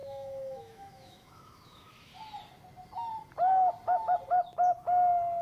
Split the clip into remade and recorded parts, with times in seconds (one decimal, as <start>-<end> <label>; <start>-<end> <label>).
0.0-2.1 remade; 2.1-5.4 recorded